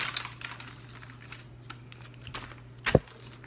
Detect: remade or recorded recorded